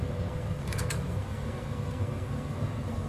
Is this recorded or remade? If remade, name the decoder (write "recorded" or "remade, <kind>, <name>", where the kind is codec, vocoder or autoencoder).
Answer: remade, codec, SNAC